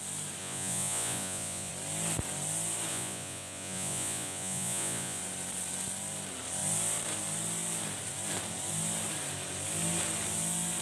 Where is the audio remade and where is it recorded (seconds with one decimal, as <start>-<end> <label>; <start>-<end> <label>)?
0.0-0.4 recorded; 0.4-1.7 remade; 1.7-2.9 recorded; 2.9-5.2 remade; 5.2-10.8 recorded